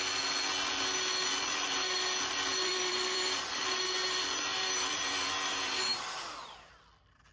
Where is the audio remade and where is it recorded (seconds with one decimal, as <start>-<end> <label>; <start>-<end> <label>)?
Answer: 0.0-2.5 recorded; 2.5-3.6 remade; 3.6-4.5 recorded; 4.5-6.7 remade; 6.7-7.3 recorded

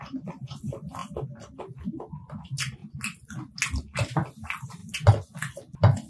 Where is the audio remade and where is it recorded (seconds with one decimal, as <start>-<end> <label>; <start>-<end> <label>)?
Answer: 0.0-1.0 remade; 1.0-1.6 recorded; 1.6-2.8 remade; 2.8-3.8 recorded; 3.8-4.8 remade; 4.8-6.1 recorded

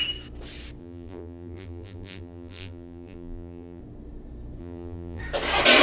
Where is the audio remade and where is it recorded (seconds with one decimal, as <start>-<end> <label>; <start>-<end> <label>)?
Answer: 0.0-0.8 recorded; 0.8-3.8 remade; 3.8-4.6 recorded; 4.6-5.2 remade; 5.2-5.8 recorded

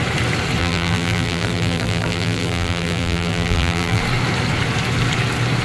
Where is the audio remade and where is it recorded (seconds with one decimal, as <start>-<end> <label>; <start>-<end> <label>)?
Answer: 0.0-0.6 recorded; 0.6-4.0 remade; 4.0-5.6 recorded

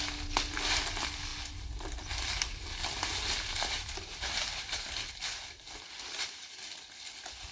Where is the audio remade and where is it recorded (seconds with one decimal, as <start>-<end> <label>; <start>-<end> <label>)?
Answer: 0.0-7.5 recorded